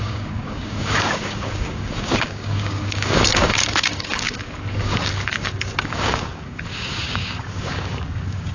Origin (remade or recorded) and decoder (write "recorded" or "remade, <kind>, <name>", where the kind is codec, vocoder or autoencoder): remade, codec, DAC